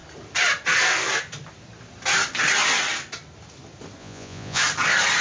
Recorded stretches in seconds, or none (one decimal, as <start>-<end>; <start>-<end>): 0.0-4.0; 4.6-5.2